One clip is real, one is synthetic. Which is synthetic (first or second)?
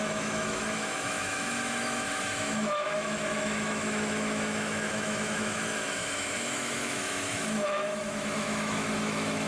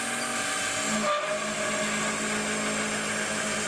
first